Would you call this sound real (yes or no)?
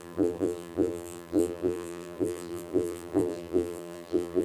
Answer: no